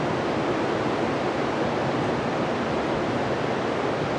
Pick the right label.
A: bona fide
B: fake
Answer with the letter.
A